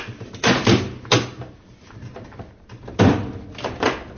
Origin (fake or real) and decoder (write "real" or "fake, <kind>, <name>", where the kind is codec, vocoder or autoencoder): real